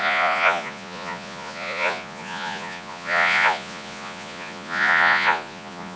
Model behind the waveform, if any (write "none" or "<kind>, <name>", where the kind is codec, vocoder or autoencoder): vocoder, Vocos